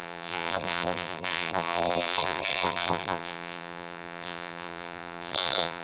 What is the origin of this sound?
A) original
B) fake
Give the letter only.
B